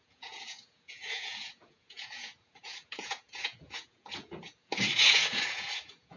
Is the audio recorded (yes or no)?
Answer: no